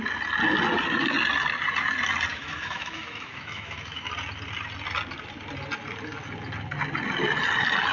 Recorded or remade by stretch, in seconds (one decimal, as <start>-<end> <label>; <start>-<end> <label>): 0.0-2.3 recorded; 2.3-4.1 remade; 4.1-7.9 recorded